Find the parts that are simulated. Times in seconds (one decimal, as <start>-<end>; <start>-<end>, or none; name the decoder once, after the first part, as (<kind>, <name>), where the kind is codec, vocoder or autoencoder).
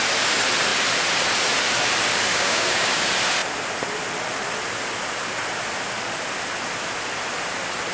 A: 2.3-3.0 (codec, DAC)